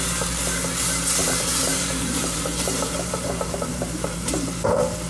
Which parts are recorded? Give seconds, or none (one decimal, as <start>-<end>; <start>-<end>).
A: 0.0-1.2; 4.3-5.1